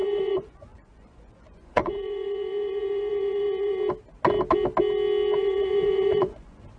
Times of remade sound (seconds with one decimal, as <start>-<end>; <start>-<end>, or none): 0.0-3.8; 5.4-6.8